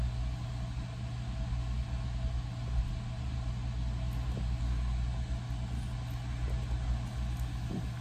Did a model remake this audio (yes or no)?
no